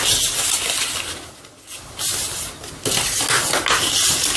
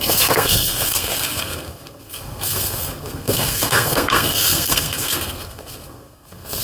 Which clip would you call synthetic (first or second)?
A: second